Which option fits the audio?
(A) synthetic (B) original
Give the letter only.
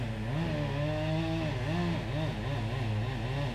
B